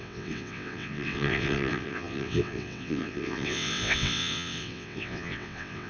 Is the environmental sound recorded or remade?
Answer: remade